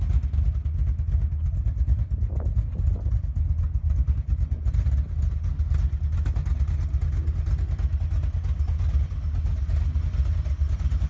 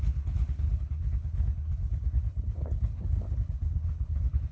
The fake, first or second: second